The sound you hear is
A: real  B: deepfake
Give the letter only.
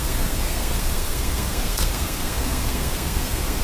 B